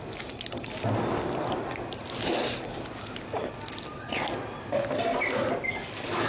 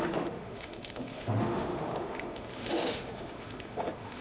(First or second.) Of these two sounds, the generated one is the second